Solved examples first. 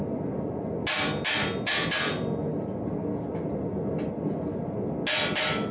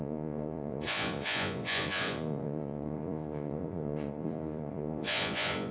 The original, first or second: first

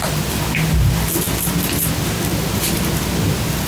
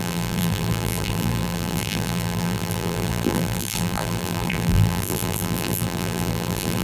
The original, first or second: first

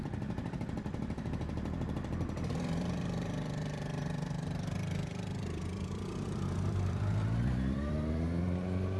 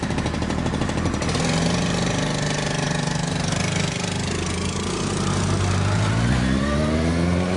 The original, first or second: second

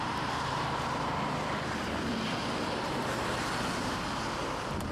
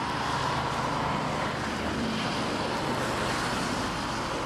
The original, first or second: second